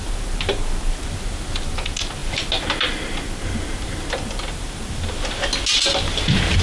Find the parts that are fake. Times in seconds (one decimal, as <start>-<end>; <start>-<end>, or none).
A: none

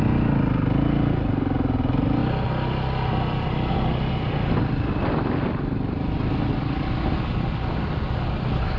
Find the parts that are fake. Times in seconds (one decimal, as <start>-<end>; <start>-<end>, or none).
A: none

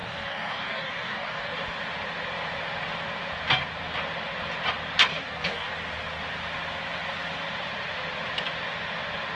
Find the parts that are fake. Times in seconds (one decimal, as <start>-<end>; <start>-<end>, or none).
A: 0.0-1.5; 5.1-5.7

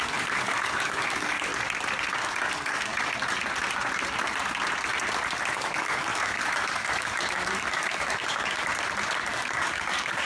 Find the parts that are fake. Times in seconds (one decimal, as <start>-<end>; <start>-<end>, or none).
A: 0.0-1.5; 2.1-2.9; 5.5-8.7; 9.3-10.3

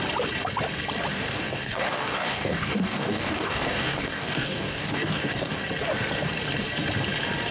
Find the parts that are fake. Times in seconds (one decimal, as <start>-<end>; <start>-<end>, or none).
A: 1.1-5.6